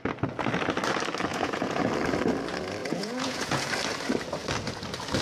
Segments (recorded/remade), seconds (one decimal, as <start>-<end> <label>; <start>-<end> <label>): 0.0-1.3 recorded; 1.3-1.8 remade; 1.8-2.8 recorded; 2.8-3.7 remade; 3.7-5.2 recorded

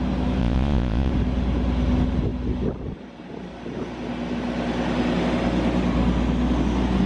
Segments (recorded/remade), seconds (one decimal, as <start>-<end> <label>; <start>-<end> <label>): 0.0-0.4 recorded; 0.4-1.1 remade; 1.1-7.1 recorded

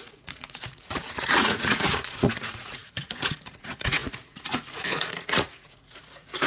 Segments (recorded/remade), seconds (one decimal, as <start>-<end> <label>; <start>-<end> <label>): 0.0-6.5 remade

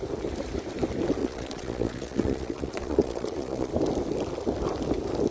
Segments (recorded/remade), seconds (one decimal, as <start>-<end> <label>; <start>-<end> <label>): 0.0-1.2 recorded; 1.2-3.7 remade; 3.7-5.3 recorded